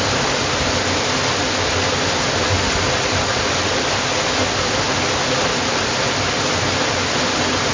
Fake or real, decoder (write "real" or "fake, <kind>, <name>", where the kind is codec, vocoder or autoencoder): real